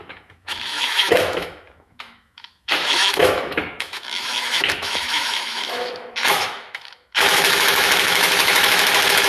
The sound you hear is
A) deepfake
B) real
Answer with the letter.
A